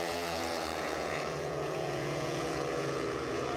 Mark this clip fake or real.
fake